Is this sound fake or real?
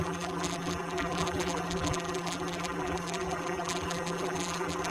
fake